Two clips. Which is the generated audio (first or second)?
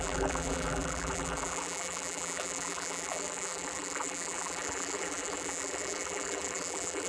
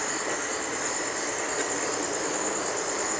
first